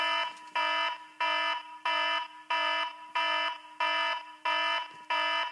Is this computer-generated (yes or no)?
no